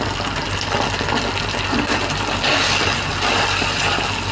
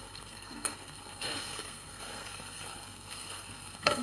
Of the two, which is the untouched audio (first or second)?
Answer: first